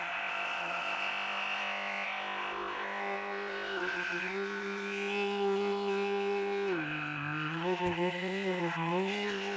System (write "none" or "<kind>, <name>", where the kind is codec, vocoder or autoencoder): codec, ZipCodec